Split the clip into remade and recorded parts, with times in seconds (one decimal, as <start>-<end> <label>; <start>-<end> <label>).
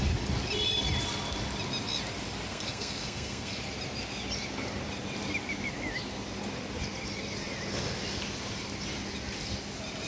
0.0-2.5 recorded; 2.5-3.6 remade; 3.6-10.1 recorded